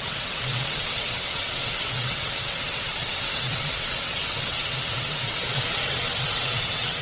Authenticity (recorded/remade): remade